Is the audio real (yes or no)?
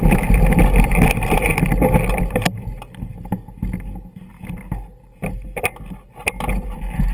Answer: yes